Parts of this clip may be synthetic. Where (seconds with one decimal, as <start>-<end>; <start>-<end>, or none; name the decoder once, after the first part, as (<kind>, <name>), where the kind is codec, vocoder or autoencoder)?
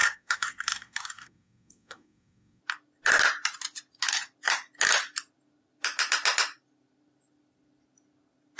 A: 0.0-2.6 (codec, SNAC)